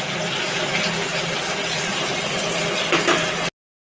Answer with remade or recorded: recorded